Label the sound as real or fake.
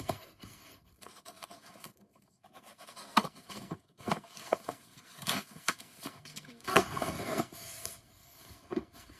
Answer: fake